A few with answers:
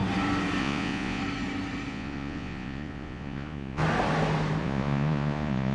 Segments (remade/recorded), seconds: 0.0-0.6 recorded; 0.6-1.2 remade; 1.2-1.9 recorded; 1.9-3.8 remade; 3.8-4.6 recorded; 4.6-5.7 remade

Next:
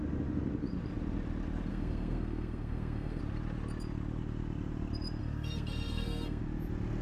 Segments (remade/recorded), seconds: 0.0-1.7 recorded; 1.7-3.2 remade; 3.2-5.2 recorded; 5.2-6.4 remade; 6.4-7.0 recorded

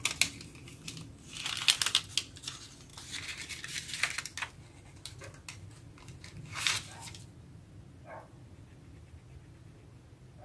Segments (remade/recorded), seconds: 0.0-10.4 recorded

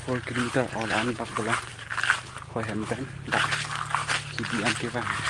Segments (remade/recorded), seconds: 0.0-5.3 recorded

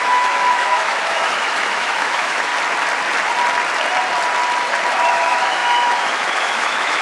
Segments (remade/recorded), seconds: 0.0-2.5 remade; 2.5-5.1 recorded; 5.1-7.0 remade

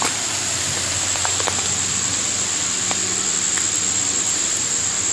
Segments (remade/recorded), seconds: 0.0-5.1 recorded